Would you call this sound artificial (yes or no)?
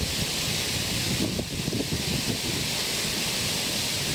no